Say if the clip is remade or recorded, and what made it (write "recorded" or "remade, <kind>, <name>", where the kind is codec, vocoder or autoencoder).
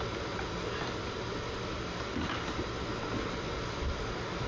recorded